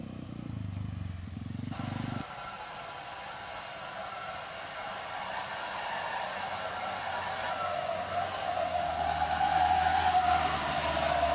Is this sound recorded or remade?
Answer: recorded